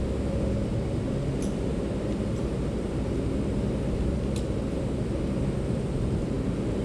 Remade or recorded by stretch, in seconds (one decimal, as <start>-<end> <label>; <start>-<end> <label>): 0.0-0.7 recorded; 0.7-1.2 remade; 1.2-1.7 recorded; 1.7-2.6 remade; 2.6-6.8 recorded